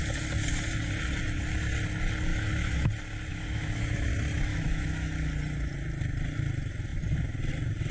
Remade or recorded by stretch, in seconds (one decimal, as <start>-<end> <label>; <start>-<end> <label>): 0.0-2.3 recorded; 2.3-2.9 remade; 2.9-3.3 recorded; 3.3-4.1 remade; 4.1-4.5 recorded; 4.5-5.3 remade; 5.3-7.9 recorded